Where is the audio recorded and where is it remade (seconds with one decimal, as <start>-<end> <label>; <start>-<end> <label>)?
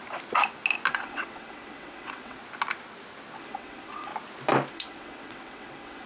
0.0-0.9 recorded; 0.9-2.4 remade; 2.4-3.4 recorded; 3.4-4.1 remade; 4.1-4.7 recorded; 4.7-6.1 remade